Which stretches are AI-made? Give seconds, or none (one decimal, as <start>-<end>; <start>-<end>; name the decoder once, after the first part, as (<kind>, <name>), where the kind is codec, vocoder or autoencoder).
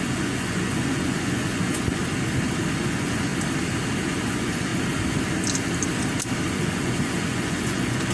0.0-2.0 (vocoder, Vocos); 2.8-3.3; 4.0-4.7; 6.5-8.1